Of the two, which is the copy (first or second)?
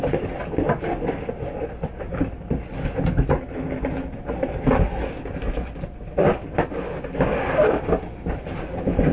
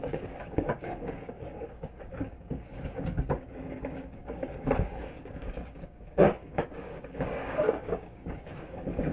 second